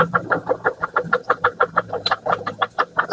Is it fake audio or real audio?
fake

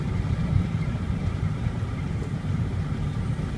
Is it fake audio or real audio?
fake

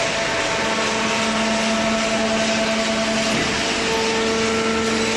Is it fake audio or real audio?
real